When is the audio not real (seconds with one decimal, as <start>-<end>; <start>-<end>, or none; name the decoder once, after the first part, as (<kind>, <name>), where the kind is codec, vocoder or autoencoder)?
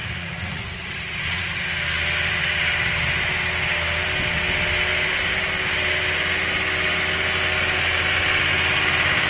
0.0-1.6 (vocoder, Vocos)